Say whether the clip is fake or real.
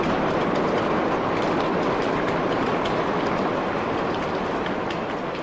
real